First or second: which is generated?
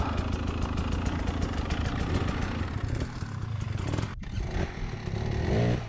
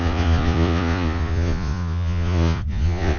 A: second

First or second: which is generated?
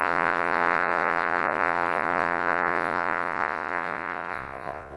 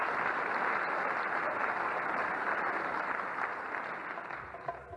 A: first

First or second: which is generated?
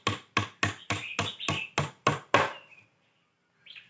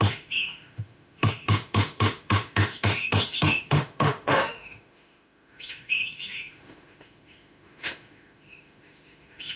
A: second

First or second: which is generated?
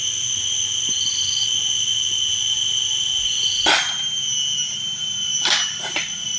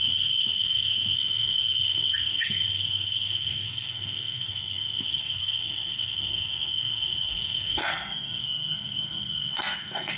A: second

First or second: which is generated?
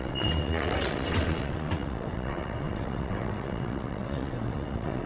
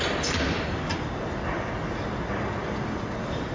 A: first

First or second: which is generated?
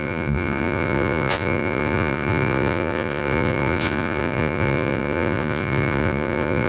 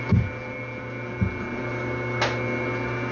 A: first